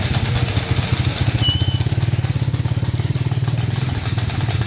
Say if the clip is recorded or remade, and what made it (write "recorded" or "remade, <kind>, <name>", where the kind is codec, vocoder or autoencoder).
recorded